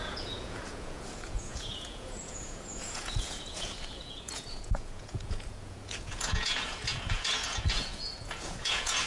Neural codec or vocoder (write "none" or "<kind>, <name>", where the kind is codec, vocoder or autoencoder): vocoder, Vocos